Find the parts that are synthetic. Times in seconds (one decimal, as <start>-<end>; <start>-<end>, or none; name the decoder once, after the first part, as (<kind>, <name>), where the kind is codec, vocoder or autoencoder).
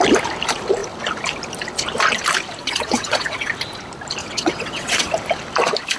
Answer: 2.6-3.5 (vocoder, WaveNeXt); 4.2-5.1